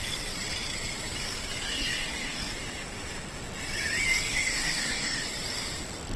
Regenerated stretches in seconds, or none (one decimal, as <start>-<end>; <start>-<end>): 1.7-2.5; 4.3-5.2